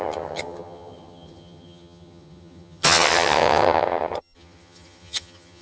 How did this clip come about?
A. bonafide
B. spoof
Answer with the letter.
B